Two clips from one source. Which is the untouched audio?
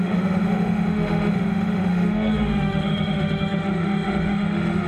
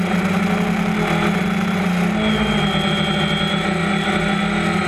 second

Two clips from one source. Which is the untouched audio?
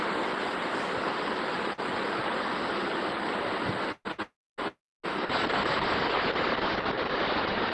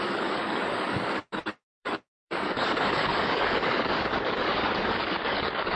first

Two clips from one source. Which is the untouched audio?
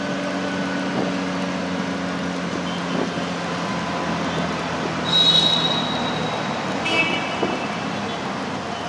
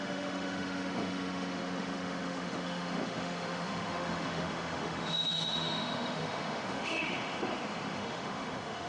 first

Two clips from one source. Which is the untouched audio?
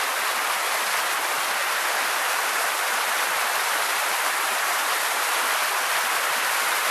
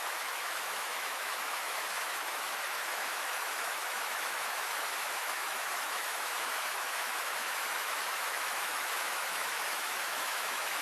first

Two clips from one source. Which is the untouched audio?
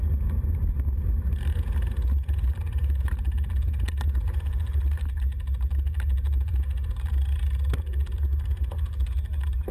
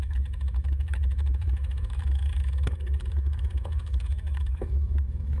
first